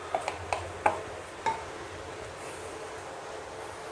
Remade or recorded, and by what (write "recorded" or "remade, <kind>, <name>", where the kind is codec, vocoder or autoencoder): recorded